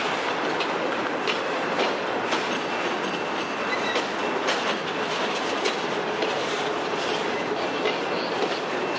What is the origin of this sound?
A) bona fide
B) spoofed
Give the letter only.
A